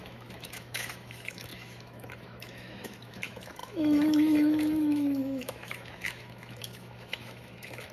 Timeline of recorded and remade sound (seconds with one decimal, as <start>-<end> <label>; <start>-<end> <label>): 0.0-7.9 remade

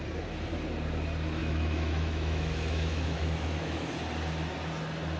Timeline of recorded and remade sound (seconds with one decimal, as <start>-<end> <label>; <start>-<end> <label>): 0.0-1.4 recorded; 1.4-3.9 remade; 3.9-5.2 recorded

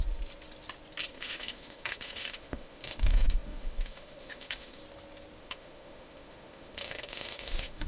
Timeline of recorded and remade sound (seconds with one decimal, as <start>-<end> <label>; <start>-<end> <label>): 0.0-1.1 recorded; 1.1-4.8 remade; 4.8-5.4 recorded; 5.4-7.9 remade

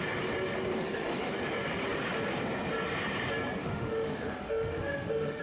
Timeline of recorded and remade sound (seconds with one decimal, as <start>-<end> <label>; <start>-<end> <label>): 0.0-0.8 recorded; 0.8-1.3 remade; 1.3-3.6 recorded; 3.6-5.4 remade